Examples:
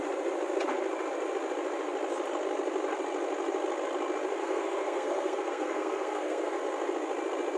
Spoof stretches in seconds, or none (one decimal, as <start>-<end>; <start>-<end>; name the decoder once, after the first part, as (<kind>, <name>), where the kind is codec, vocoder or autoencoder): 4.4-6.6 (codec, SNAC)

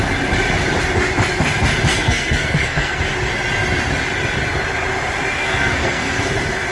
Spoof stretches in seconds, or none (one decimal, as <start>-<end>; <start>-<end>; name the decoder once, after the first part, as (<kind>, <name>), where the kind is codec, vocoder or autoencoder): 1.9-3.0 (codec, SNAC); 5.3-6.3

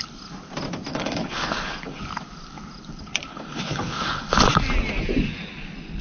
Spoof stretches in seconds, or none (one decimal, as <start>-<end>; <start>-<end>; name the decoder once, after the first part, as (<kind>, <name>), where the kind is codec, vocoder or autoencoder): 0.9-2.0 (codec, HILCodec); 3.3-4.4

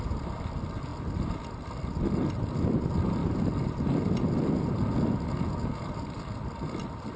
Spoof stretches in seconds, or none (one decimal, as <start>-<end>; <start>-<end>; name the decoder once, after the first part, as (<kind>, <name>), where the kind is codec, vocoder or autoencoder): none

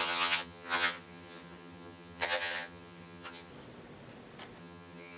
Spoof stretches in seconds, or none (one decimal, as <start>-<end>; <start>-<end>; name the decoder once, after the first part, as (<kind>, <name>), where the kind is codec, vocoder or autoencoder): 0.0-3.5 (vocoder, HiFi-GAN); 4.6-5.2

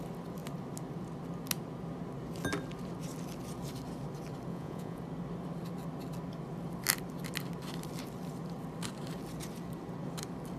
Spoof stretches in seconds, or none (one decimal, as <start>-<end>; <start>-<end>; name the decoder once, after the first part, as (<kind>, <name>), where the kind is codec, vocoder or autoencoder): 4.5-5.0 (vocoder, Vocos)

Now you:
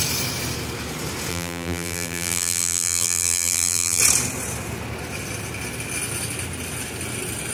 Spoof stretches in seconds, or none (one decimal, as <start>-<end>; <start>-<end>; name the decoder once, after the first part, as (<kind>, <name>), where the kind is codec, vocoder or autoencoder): 1.3-4.0 (vocoder, BigVGAN v2)

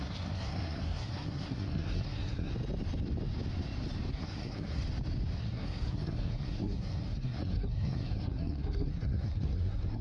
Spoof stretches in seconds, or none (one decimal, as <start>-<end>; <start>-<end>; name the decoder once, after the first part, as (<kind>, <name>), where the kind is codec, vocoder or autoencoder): 0.0-2.5 (codec, SNAC); 4.1-4.8; 5.4-10.0